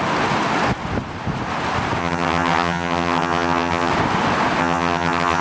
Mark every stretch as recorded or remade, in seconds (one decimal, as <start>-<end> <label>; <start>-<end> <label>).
0.0-2.0 recorded; 2.0-3.9 remade; 3.9-4.6 recorded; 4.6-5.4 remade